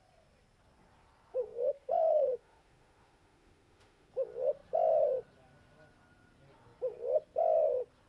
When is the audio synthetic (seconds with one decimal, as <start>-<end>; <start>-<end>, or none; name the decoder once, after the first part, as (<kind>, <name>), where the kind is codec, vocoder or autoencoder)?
1.4-4.1 (autoencoder, DAC-VAE)